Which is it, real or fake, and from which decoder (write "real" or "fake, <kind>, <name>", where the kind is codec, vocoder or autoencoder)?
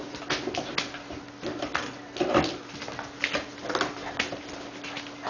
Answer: real